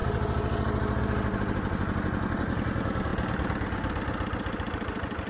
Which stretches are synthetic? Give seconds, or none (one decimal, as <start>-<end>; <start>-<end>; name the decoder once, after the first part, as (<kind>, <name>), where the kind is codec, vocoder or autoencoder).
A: none

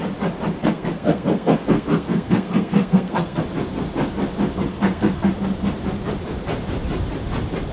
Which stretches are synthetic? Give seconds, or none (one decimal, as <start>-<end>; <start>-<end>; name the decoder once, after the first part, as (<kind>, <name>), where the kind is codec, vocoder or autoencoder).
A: 0.6-3.4 (codec, SNAC); 4.7-5.3

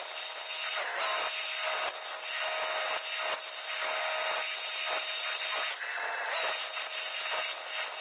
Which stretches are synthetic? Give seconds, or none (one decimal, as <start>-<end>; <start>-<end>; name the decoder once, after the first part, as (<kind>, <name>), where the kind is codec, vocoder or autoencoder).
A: none